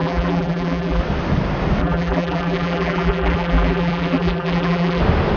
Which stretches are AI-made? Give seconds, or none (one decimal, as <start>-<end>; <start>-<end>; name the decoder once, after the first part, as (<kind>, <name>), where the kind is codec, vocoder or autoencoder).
0.0-1.0 (vocoder, BigVGAN v2); 1.8-5.0